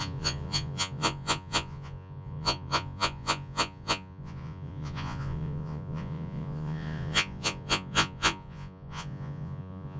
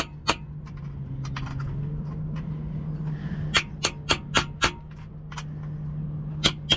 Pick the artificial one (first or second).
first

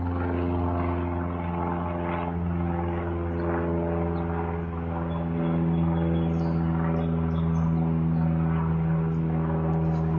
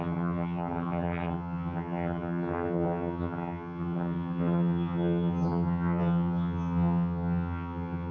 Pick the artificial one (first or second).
second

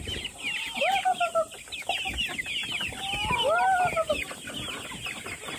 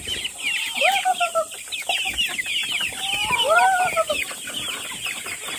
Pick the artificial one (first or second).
second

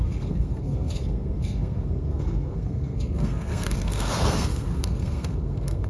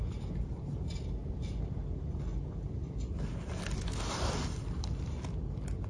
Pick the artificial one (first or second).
first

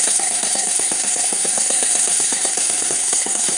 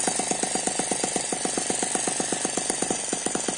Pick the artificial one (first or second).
first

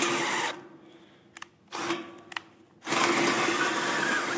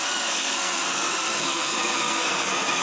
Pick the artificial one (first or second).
second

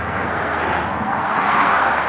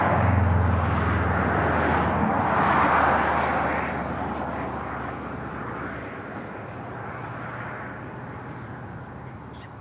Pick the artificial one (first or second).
first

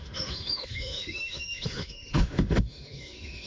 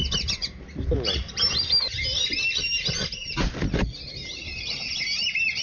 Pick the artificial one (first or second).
first